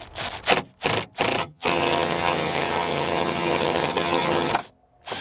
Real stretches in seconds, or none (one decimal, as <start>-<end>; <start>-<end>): 0.0-1.4; 4.5-5.2